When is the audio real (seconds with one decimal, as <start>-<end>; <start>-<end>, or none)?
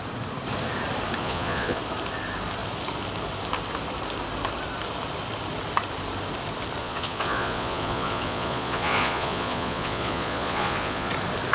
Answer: 0.0-1.2; 1.8-6.8; 11.1-11.5